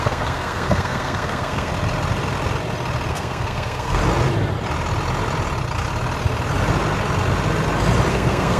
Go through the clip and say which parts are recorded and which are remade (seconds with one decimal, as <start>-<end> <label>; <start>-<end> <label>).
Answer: 0.0-1.7 remade; 1.7-3.1 recorded; 3.1-4.0 remade; 4.0-8.1 recorded; 8.1-8.6 remade